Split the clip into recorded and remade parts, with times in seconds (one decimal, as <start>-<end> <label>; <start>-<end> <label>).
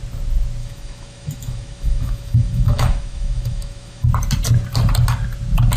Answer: 0.0-0.6 recorded; 0.6-4.1 remade; 4.1-5.8 recorded